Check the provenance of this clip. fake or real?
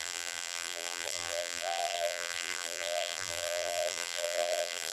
fake